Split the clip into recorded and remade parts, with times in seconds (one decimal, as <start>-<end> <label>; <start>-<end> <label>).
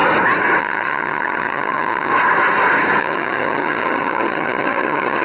0.0-0.6 recorded; 0.6-2.1 remade; 2.1-3.0 recorded; 3.0-5.2 remade